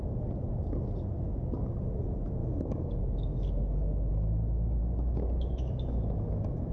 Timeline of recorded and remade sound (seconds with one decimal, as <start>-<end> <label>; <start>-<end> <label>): 0.0-2.4 recorded; 2.4-4.1 remade; 4.1-4.8 recorded; 4.8-6.7 remade